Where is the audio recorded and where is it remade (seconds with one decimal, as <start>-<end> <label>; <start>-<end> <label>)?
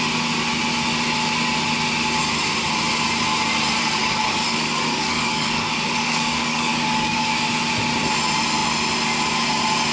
0.0-3.8 recorded; 3.8-7.3 remade; 7.3-9.9 recorded